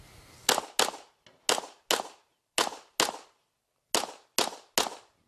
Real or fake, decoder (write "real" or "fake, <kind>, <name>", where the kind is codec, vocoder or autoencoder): real